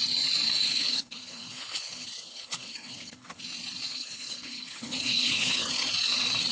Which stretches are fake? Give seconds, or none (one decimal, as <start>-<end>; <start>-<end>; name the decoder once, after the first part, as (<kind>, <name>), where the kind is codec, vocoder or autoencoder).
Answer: 0.6-3.4 (codec, HILCodec); 3.9-5.7